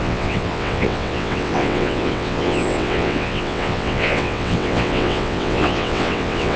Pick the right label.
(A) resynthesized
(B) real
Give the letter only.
A